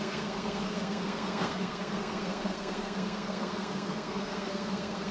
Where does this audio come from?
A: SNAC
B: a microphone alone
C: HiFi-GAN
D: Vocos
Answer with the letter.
A